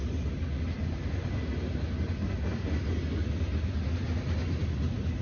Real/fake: real